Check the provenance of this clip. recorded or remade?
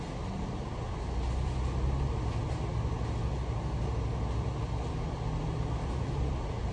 recorded